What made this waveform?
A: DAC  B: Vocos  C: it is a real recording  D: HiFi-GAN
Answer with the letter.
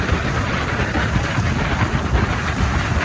C